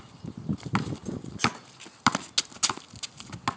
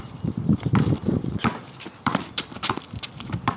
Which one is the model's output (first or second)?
second